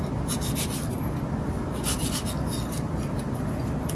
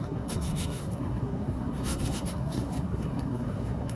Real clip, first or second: first